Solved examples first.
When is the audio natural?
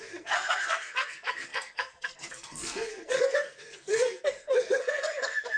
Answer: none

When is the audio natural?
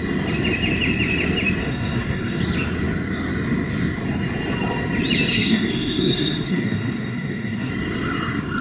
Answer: 0.0-1.6; 2.4-5.3; 7.7-8.6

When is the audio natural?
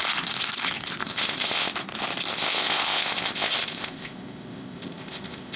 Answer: 0.0-1.0; 1.7-2.3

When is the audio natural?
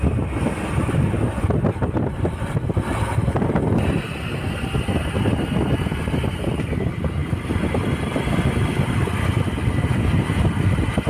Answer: 0.0-11.1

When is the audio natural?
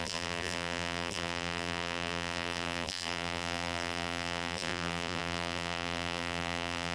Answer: none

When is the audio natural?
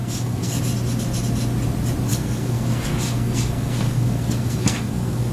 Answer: 0.6-2.1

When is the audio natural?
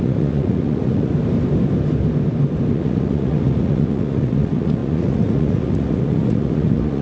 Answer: 1.1-2.7